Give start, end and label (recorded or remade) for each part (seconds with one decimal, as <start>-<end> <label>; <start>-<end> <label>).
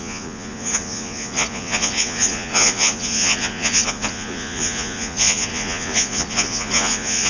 0.0-7.3 remade